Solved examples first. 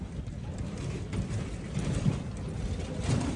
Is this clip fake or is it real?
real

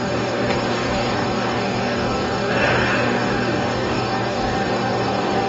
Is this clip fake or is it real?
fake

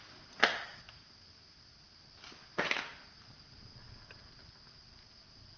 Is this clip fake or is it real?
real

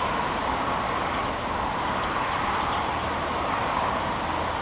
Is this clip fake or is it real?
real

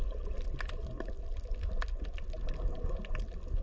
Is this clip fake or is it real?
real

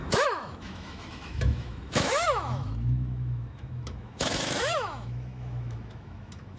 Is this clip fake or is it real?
fake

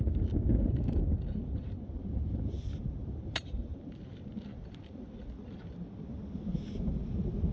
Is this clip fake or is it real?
real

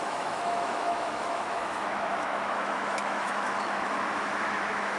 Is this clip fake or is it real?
fake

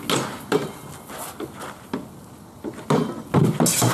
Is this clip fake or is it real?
real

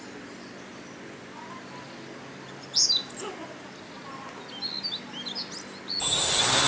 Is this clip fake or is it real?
real